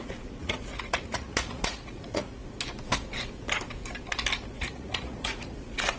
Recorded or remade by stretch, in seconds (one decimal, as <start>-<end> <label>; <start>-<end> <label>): 0.0-2.4 remade; 2.4-4.7 recorded; 4.7-6.0 remade